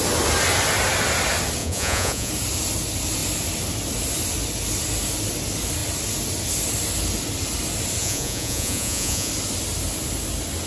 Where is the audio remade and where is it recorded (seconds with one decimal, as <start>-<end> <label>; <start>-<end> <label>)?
0.0-1.6 recorded; 1.6-2.3 remade; 2.3-8.0 recorded; 8.0-9.3 remade; 9.3-10.7 recorded